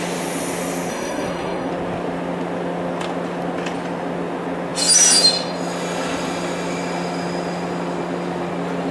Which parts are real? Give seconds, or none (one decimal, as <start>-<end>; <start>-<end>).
0.0-0.9; 1.7-8.9